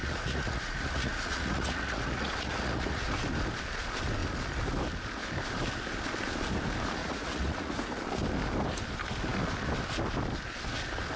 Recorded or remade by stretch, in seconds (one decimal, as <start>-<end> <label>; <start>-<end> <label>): 0.0-3.1 remade; 3.1-7.0 recorded; 7.0-8.0 remade; 8.0-11.2 recorded